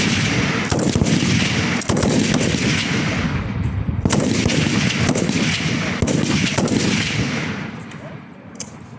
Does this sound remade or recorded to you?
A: recorded